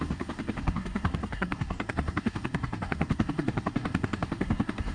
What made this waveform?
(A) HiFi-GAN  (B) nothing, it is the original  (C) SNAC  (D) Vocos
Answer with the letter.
C